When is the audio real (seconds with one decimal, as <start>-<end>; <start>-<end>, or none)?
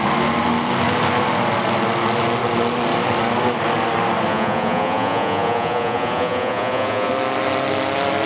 0.0-4.3; 7.1-8.3